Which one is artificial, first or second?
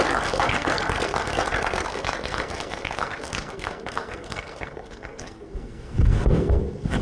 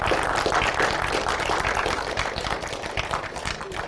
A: first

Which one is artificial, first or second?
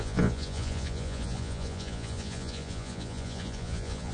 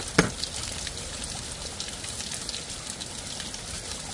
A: first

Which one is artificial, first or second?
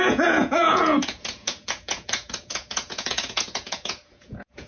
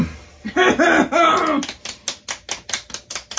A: first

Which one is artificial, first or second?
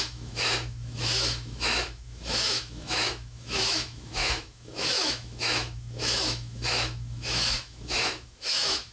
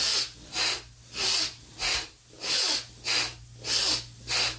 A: first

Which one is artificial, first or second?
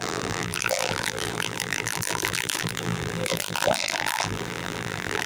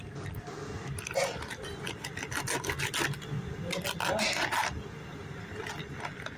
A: first